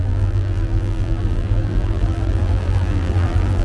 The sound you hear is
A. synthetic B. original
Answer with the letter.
A